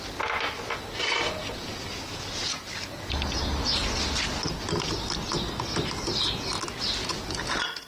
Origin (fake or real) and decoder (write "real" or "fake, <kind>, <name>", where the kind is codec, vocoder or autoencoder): real